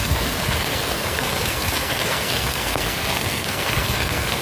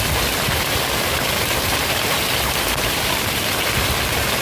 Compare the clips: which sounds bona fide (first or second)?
second